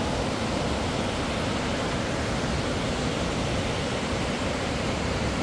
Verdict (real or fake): real